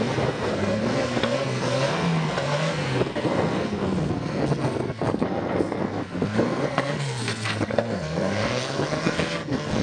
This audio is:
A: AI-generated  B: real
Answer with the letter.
A